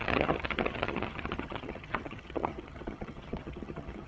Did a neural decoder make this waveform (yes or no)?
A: yes